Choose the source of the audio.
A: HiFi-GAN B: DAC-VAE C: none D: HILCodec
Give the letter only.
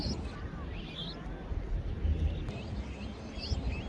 C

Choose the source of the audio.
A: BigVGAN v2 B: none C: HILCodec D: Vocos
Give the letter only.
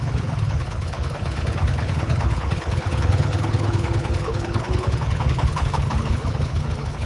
C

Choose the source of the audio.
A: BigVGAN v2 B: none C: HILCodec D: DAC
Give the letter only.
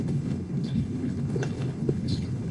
C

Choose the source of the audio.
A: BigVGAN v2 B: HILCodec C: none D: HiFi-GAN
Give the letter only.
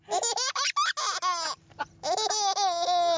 C